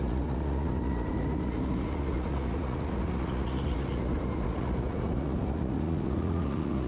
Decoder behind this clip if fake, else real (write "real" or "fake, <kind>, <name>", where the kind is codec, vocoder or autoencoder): fake, vocoder, Vocos